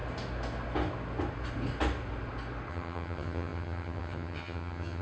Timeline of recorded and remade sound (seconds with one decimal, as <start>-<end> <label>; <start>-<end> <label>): 0.0-2.7 recorded; 2.7-5.0 remade